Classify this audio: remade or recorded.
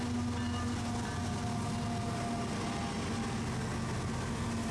recorded